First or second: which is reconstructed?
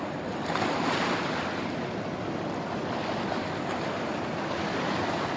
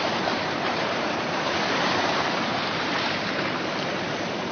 second